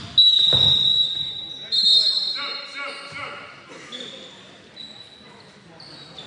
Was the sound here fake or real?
real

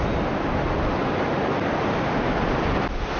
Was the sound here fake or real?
real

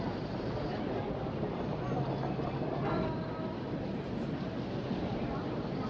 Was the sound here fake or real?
real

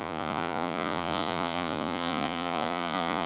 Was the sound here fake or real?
fake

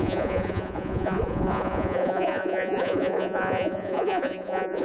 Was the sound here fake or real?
fake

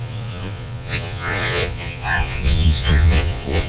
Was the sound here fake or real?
fake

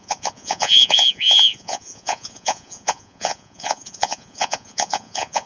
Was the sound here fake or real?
fake